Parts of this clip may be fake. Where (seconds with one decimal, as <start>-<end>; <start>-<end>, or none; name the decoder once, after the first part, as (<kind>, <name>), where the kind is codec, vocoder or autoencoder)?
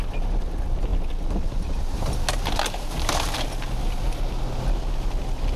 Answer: none